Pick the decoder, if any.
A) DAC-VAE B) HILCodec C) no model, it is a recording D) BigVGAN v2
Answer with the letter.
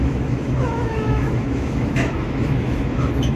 A